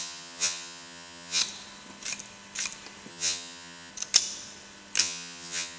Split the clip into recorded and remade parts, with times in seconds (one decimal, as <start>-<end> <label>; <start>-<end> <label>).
0.0-1.4 remade; 1.4-3.1 recorded; 3.1-3.9 remade; 3.9-5.0 recorded; 5.0-5.8 remade